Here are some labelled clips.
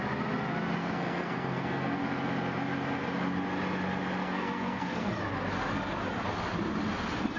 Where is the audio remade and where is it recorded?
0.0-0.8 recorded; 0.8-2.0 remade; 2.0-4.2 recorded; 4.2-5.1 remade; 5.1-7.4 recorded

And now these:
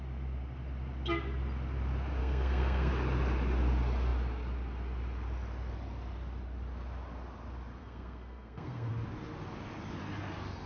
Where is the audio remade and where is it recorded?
0.0-2.2 recorded; 2.2-2.9 remade; 2.9-7.8 recorded; 7.8-8.9 remade; 8.9-10.7 recorded